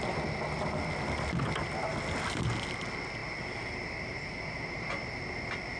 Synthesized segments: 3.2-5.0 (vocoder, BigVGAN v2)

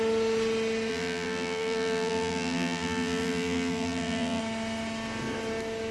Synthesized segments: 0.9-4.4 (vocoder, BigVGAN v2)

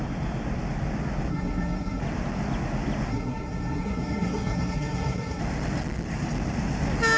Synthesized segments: 1.3-2.0 (codec, SNAC); 3.1-5.4

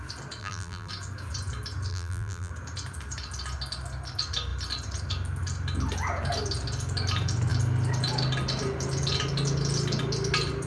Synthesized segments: 0.4-0.9 (vocoder, BigVGAN v2); 1.9-2.5

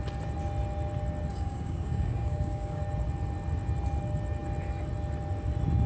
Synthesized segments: 1.3-2.8 (codec, DAC)